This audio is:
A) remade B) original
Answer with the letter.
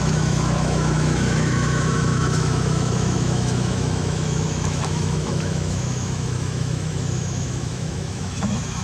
A